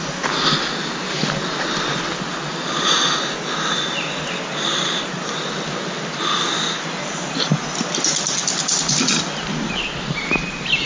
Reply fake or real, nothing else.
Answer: real